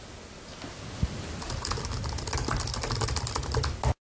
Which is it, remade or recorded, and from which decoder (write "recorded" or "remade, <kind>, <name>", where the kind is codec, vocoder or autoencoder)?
recorded